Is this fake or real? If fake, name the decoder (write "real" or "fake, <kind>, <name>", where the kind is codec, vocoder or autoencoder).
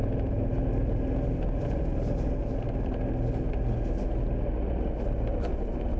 real